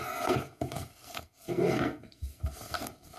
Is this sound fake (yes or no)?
yes